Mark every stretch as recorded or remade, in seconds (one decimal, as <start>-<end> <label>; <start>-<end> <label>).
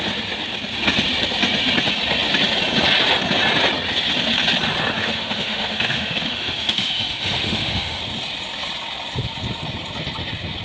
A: 0.0-5.0 recorded; 5.0-8.0 remade; 8.0-10.6 recorded